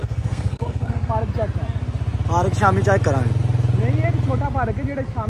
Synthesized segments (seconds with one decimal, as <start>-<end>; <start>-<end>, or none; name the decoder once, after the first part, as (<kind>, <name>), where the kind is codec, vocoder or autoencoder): 0.0-1.1 (codec, SNAC)